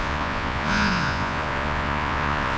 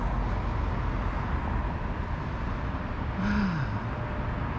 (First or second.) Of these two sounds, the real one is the second